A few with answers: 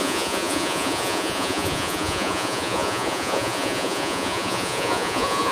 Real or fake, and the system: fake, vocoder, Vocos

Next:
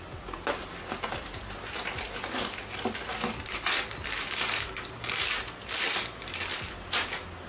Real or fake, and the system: real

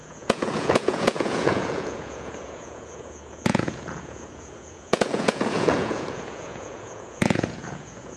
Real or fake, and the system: fake, vocoder, Vocos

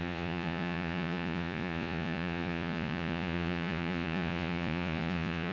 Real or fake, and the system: fake, vocoder, Vocos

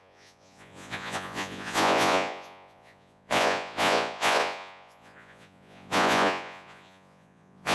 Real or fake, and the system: fake, vocoder, Vocos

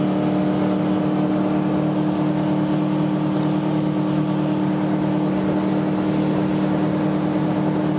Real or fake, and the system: real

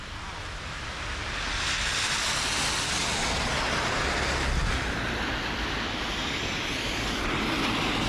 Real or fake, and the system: real